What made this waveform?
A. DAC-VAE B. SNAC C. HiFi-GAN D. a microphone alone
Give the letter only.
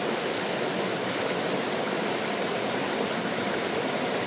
D